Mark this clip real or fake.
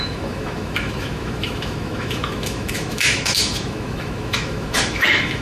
fake